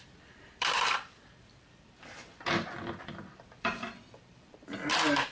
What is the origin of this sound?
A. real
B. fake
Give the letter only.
B